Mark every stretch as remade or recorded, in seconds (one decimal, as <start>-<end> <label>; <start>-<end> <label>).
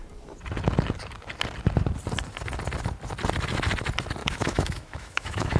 0.0-4.2 recorded; 4.2-5.6 remade